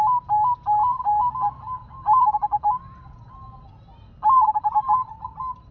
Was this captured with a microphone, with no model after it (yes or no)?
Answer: yes